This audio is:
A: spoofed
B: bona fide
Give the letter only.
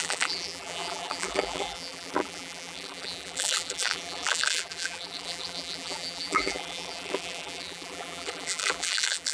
A